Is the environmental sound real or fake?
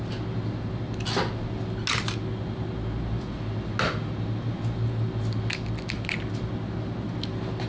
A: real